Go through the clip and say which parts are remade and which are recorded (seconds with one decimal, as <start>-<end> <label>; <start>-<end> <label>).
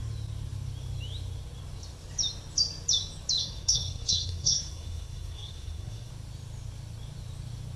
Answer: 0.0-3.4 recorded; 3.4-6.1 remade; 6.1-7.8 recorded